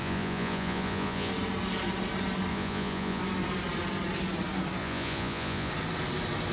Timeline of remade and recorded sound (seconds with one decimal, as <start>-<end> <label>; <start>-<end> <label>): 0.0-1.3 remade; 1.3-2.5 recorded; 2.5-3.2 remade; 3.2-4.8 recorded; 4.8-5.7 remade; 5.7-6.5 recorded